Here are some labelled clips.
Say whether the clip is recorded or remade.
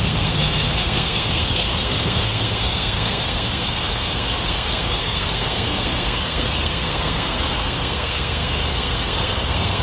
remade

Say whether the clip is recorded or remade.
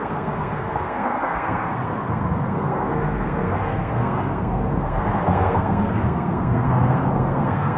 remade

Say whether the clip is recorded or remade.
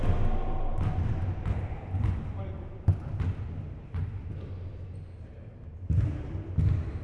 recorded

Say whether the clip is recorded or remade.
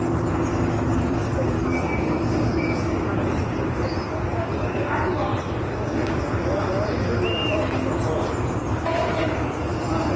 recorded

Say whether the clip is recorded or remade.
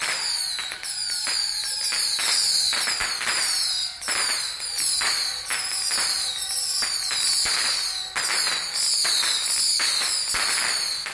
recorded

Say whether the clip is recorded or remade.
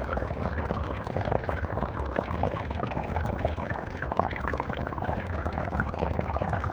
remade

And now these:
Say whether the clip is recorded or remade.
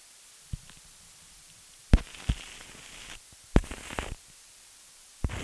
recorded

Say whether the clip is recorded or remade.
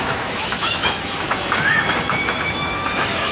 remade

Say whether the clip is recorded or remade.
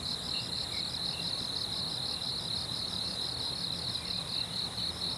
recorded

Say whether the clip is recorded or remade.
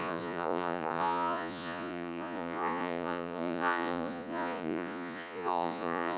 remade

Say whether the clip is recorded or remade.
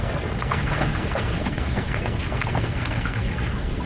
remade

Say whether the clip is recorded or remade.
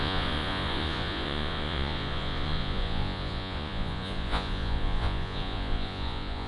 remade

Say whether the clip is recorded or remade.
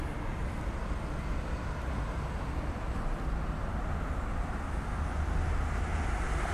recorded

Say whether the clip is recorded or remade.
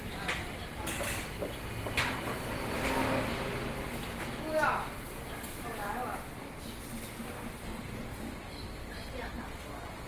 recorded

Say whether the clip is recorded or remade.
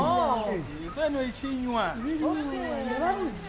recorded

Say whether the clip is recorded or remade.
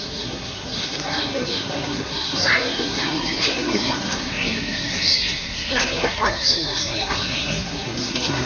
remade